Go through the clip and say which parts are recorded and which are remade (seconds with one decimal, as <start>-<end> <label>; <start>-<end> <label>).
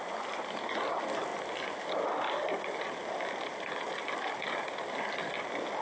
0.0-5.8 recorded